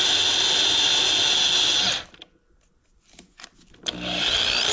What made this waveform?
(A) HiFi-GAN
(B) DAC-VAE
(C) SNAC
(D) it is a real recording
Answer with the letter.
D